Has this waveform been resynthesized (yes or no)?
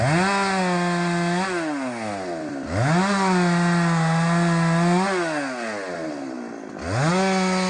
no